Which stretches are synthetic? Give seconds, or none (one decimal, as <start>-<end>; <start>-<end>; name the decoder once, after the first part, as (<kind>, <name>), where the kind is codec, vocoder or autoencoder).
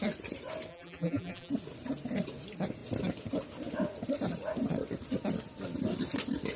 0.7-1.5 (vocoder, BigVGAN v2)